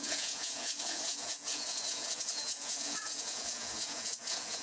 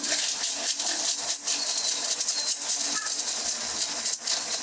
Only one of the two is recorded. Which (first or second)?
second